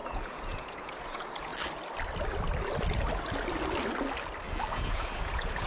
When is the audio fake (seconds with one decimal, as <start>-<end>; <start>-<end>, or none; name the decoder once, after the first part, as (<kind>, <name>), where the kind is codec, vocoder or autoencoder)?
0.0-1.5 (vocoder, Vocos); 4.7-5.7